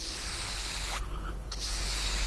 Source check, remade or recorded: remade